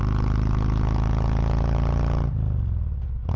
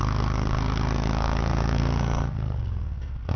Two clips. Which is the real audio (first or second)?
first